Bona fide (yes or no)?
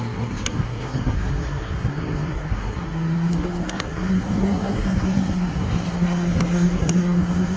no